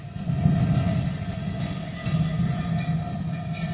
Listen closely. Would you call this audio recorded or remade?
recorded